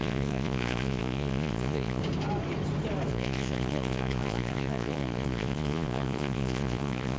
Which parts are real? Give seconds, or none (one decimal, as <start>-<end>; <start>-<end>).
2.0-3.1

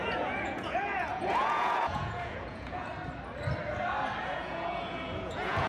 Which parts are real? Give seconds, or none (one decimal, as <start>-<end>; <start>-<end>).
2.9-4.2